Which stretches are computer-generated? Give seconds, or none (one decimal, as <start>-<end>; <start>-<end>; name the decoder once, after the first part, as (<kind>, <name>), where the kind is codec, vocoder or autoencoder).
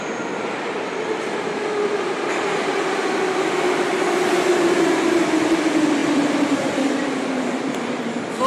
6.0-6.9 (vocoder, BigVGAN v2)